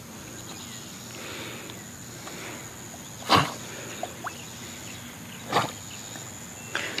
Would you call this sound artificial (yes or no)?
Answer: no